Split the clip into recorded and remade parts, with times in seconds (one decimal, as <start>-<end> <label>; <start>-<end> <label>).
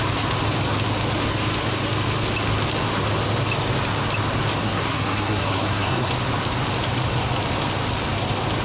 0.0-4.6 recorded; 4.6-6.1 remade; 6.1-8.6 recorded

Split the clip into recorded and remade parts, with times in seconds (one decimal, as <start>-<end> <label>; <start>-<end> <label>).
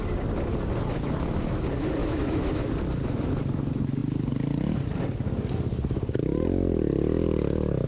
0.0-2.0 recorded; 2.0-2.7 remade; 2.7-7.9 recorded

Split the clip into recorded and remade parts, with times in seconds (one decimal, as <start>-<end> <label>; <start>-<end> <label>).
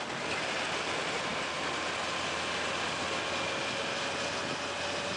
0.0-5.2 recorded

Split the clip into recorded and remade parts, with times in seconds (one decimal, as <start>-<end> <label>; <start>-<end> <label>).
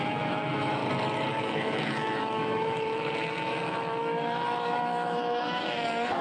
0.0-0.8 remade; 0.8-1.4 recorded; 1.4-6.2 remade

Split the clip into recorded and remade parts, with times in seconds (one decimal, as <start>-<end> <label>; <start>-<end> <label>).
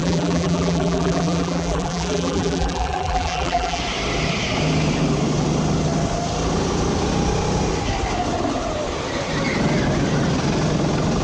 0.0-3.8 remade; 3.8-11.2 recorded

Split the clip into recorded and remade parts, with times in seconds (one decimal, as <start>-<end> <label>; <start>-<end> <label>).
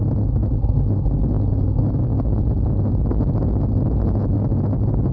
0.0-5.1 recorded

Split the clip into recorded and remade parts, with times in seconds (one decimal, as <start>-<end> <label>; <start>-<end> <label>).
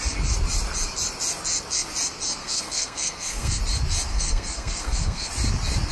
0.0-2.4 recorded; 2.4-3.6 remade; 3.6-4.1 recorded; 4.1-5.3 remade; 5.3-5.9 recorded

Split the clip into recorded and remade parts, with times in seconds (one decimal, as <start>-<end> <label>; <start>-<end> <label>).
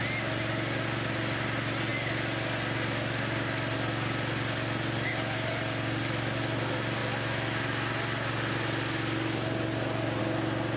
0.0-10.8 recorded